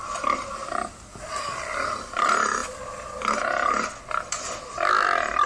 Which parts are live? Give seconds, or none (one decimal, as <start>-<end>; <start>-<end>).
0.0-0.6; 1.2-5.5